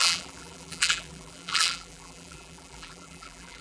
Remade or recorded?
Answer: remade